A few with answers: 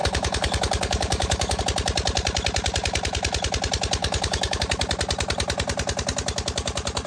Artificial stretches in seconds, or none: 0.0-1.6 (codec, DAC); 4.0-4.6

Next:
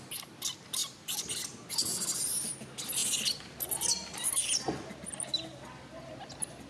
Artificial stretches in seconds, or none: none

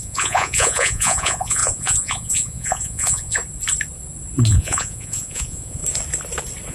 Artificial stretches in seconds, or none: 0.0-3.4 (vocoder, Vocos); 4.5-5.8

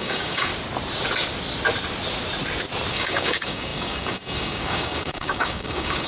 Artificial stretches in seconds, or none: 0.0-0.5 (codec, DAC); 2.9-6.1

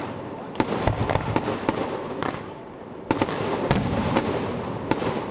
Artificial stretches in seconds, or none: 4.0-4.7 (vocoder, BigVGAN v2)

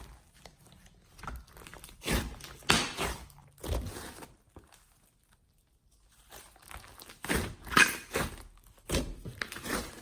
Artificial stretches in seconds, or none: none